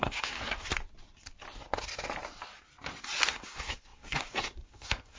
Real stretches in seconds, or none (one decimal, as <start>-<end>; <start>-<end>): 0.7-3.3